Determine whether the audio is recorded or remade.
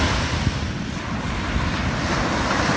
recorded